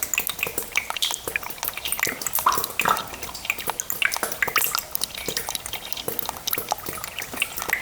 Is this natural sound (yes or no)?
yes